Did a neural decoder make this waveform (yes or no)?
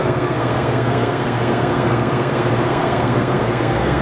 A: yes